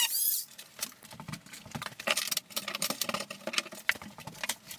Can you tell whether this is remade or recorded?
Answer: recorded